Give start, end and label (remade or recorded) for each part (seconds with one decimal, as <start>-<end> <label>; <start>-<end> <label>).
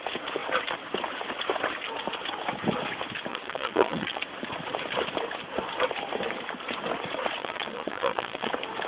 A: 0.0-3.3 recorded; 3.3-4.2 remade; 4.2-7.4 recorded; 7.4-8.5 remade; 8.5-8.9 recorded